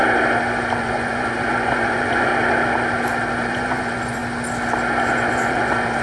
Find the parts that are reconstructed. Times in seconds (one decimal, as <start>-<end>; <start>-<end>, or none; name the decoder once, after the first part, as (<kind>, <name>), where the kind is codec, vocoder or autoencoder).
0.8-2.3 (vocoder, Vocos); 3.4-4.2; 5.0-6.0